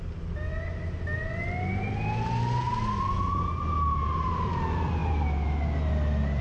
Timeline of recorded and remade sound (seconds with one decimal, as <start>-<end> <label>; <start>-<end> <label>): 0.0-6.4 recorded